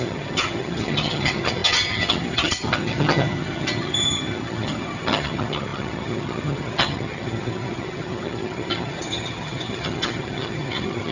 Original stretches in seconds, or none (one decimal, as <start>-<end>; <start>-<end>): none